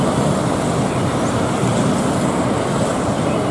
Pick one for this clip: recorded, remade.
recorded